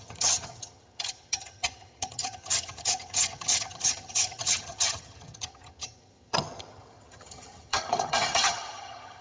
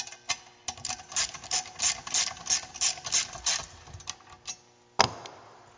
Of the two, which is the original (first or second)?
second